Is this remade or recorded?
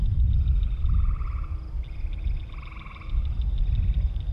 recorded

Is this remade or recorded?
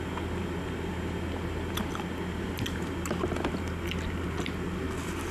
recorded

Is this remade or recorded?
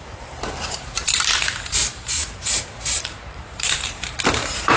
remade